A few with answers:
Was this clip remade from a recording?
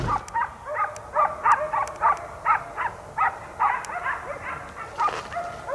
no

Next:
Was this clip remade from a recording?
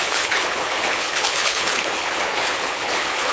yes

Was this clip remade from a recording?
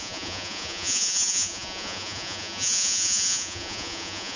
yes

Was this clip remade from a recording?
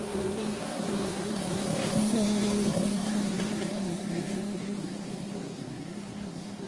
yes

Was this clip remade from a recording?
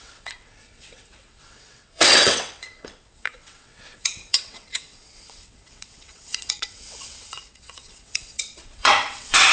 yes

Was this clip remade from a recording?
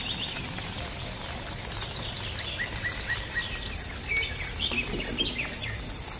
yes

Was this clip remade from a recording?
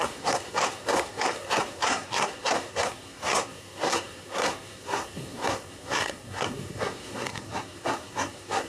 yes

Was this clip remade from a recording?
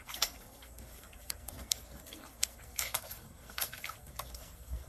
yes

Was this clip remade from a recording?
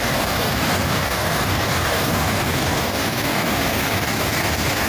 yes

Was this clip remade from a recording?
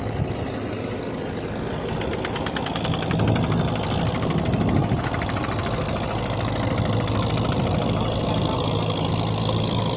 no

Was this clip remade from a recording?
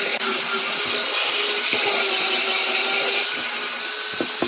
no